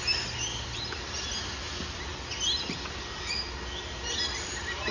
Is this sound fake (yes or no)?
no